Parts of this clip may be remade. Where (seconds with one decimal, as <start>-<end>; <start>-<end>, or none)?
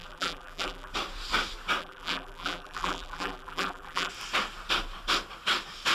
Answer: 0.0-0.9; 1.8-4.1